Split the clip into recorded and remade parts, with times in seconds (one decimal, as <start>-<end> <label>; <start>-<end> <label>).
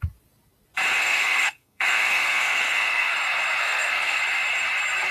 0.0-1.0 recorded; 1.0-3.1 remade; 3.1-3.6 recorded; 3.6-4.2 remade; 4.2-5.1 recorded